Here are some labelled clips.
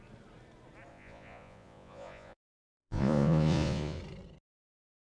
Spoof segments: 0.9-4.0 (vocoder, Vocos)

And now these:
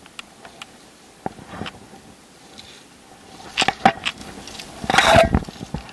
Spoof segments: none

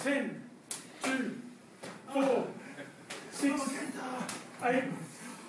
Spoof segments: 1.6-4.9 (vocoder, BigVGAN v2)

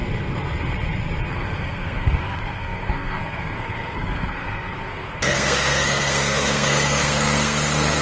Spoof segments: 1.3-8.0 (codec, SNAC)

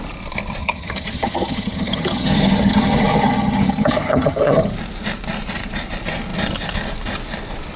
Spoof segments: 0.6-4.7 (vocoder, HiFi-GAN)

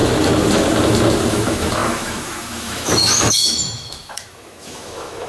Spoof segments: 1.3-5.3 (autoencoder, DAC-VAE)

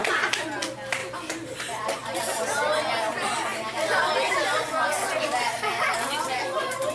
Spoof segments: 1.0-2.2 (vocoder, BigVGAN v2)